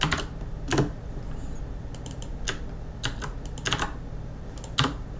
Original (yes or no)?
yes